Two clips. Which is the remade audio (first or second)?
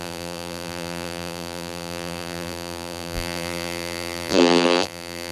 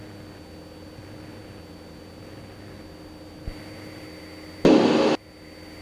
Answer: first